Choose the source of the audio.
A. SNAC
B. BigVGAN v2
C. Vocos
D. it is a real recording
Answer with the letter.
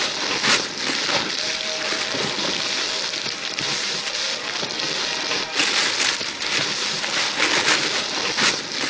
D